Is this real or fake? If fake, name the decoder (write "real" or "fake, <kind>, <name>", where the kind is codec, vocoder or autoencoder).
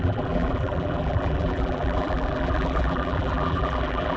fake, vocoder, BigVGAN v2